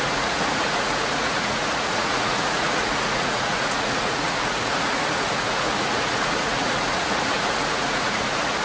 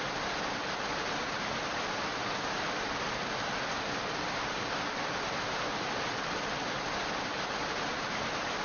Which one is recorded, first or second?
second